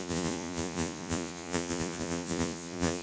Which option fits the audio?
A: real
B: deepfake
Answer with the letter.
B